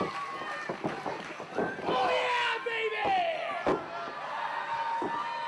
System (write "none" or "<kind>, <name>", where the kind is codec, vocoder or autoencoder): none